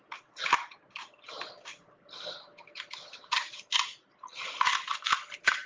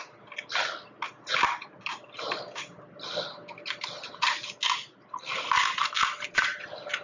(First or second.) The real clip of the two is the second